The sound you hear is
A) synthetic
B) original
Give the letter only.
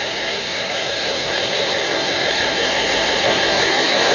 A